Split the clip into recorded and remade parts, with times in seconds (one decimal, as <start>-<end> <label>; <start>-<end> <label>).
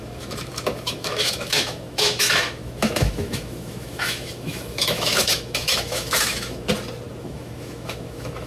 0.0-6.7 remade; 6.7-7.2 recorded; 7.2-8.5 remade